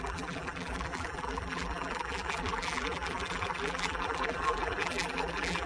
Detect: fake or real fake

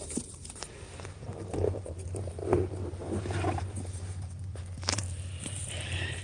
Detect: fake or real fake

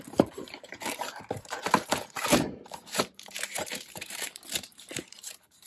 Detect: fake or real fake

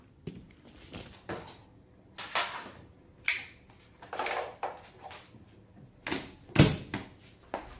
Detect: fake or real real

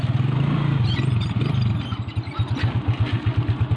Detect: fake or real real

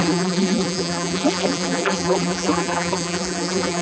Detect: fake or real fake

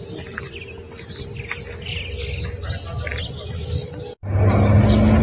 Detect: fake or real real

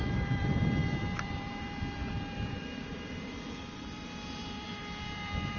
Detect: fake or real fake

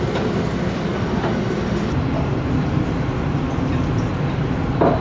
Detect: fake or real fake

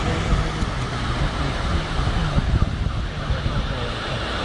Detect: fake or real real